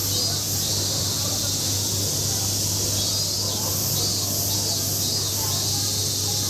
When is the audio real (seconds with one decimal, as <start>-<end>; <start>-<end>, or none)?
0.0-6.5